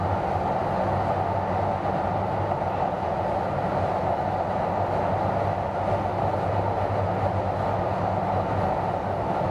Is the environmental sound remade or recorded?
recorded